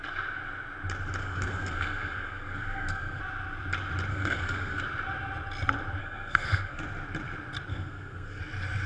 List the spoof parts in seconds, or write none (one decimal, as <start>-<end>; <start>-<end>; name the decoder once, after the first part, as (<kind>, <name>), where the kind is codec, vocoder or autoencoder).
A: 1.2-3.2 (codec, SNAC); 4.1-4.8; 6.0-6.8; 7.7-8.4